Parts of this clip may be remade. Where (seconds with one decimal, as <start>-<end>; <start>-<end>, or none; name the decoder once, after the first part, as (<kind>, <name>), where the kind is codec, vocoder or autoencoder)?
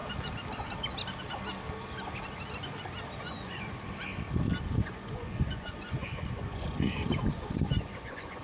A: 3.2-3.8 (vocoder, Vocos); 4.8-8.4